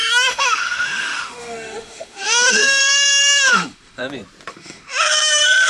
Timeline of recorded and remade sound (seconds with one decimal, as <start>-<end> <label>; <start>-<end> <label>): 0.0-4.0 remade; 4.0-4.5 recorded; 4.5-5.7 remade